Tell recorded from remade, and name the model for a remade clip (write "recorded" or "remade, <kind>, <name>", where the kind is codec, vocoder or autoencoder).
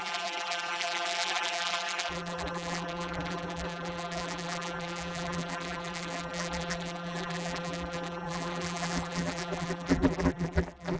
remade, vocoder, BigVGAN v2